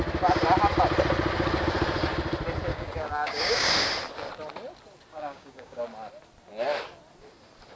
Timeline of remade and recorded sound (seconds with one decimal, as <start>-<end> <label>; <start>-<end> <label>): 0.0-2.7 recorded; 2.7-3.7 remade; 3.7-5.1 recorded; 5.1-5.8 remade; 5.8-7.8 recorded

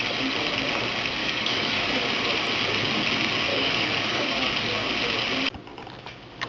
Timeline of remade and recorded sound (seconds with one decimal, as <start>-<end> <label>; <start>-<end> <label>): 0.0-1.2 recorded; 1.2-2.0 remade; 2.0-3.5 recorded; 3.5-4.5 remade; 4.5-6.5 recorded

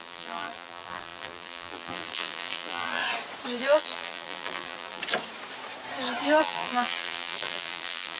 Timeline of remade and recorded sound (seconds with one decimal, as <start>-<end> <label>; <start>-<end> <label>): 0.0-3.0 remade; 3.0-3.6 recorded; 3.6-5.0 remade; 5.0-6.4 recorded; 6.4-8.2 remade

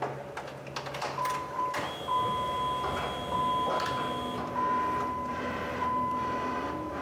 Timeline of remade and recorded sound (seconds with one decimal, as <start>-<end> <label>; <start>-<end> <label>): 0.0-5.3 recorded; 5.3-5.8 remade; 5.8-7.0 recorded